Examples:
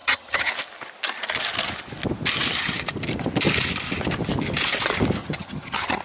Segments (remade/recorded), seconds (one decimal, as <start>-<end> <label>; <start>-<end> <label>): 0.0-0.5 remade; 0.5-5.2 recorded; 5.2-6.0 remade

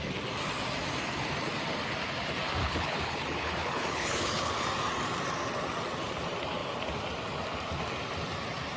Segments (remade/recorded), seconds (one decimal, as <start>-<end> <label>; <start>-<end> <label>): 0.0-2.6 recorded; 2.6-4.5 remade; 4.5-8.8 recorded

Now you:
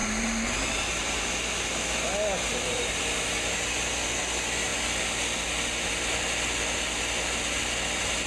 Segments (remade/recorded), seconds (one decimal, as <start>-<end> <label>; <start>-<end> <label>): 0.0-1.2 remade; 1.2-2.5 recorded; 2.5-3.0 remade; 3.0-8.3 recorded